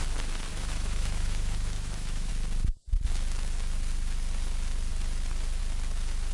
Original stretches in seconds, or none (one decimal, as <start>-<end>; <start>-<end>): 0.0-0.5; 2.3-6.3